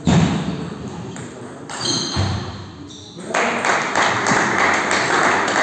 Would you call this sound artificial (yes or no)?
no